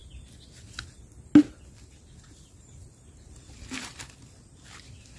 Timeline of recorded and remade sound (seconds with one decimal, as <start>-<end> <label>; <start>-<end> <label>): 0.0-5.2 recorded